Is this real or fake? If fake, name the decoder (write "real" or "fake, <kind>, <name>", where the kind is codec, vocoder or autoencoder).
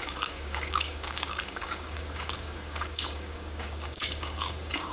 fake, codec, DAC